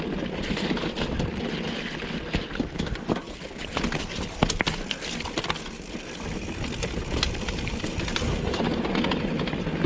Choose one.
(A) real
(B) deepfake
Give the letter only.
A